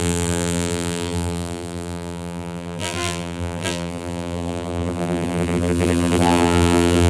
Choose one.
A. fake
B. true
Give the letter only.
A